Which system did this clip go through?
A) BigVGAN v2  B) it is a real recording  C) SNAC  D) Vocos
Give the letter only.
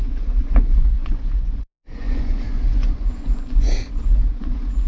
D